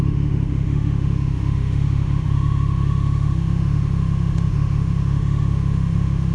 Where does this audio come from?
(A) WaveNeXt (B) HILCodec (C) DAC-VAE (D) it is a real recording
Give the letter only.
C